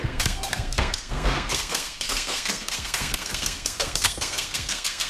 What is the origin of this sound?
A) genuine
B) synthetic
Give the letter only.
B